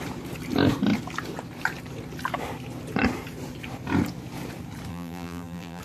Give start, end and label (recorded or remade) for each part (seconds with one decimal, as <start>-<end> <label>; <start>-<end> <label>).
0.0-4.9 recorded; 4.9-5.8 remade